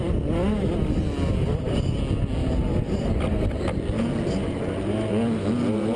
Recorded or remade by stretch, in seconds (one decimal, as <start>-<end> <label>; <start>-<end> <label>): 0.0-6.0 recorded